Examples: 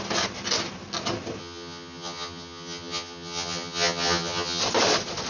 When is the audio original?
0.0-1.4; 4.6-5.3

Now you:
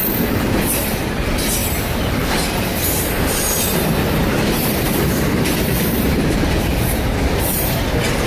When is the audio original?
0.5-1.6; 3.6-4.0; 7.8-8.3

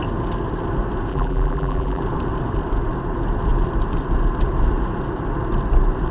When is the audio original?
0.0-1.1; 2.0-6.1

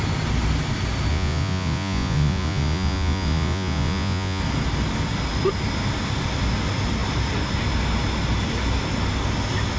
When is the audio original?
0.0-1.1; 4.4-9.8

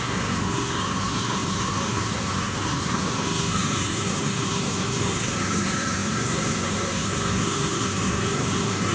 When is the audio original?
none

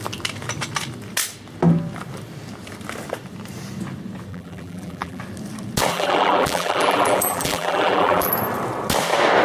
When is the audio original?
0.0-4.3; 5.2-5.9; 8.3-9.4

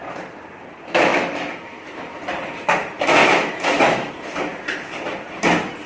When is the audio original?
0.0-1.1; 2.1-3.2; 4.1-5.9